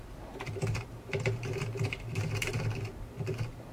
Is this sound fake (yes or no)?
yes